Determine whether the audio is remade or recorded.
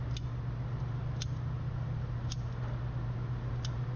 recorded